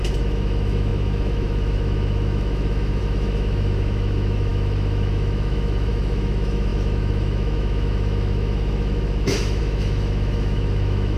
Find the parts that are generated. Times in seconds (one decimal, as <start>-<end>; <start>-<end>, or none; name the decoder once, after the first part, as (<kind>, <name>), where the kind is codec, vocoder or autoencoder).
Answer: 0.0-11.2 (autoencoder, DAC-VAE)